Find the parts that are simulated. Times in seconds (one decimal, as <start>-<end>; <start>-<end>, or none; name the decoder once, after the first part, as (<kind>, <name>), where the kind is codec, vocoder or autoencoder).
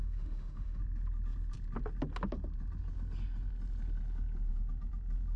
0.0-0.8 (autoencoder, DAC-VAE)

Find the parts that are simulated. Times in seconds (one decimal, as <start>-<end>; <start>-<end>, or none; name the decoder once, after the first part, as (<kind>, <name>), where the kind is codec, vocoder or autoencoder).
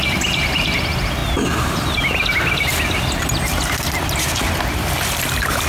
none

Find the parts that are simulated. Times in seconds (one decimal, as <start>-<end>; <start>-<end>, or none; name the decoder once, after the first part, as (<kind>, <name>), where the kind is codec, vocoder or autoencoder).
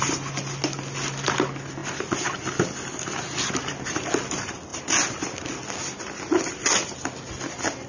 1.8-4.1 (vocoder, BigVGAN v2)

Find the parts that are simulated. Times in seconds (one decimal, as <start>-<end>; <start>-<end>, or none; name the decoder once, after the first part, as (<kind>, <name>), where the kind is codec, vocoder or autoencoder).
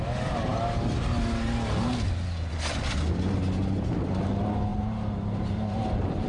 4.7-6.3 (vocoder, BigVGAN v2)